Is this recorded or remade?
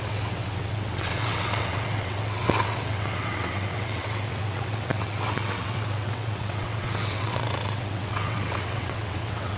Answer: remade